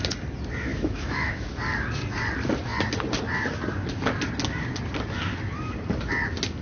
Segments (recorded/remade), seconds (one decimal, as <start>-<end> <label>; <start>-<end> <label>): 0.0-0.7 recorded; 0.7-1.5 remade; 1.5-6.6 recorded